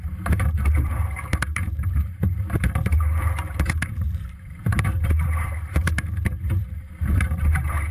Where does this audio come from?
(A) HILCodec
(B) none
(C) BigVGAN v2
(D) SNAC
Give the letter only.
C